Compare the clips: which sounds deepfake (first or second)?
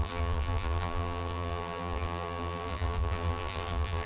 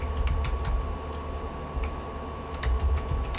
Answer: first